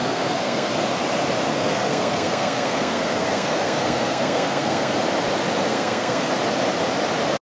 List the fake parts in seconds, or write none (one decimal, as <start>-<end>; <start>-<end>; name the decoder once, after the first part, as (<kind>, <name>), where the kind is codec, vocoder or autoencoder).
0.0-0.7 (codec, SNAC); 1.5-4.9; 5.7-6.3